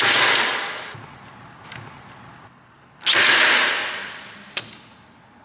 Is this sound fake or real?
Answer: real